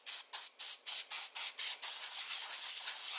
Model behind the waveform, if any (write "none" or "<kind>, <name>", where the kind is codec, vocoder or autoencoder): none